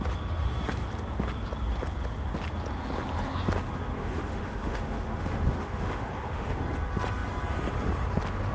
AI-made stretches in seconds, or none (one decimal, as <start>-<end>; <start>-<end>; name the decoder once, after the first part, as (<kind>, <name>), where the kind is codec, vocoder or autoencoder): 4.0-6.6 (autoencoder, DAC-VAE)

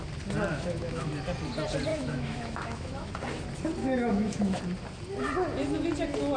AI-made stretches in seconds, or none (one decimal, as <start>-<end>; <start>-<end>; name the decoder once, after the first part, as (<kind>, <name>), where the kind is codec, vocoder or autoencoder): 0.5-1.1 (autoencoder, DAC-VAE); 1.9-3.1; 3.8-4.6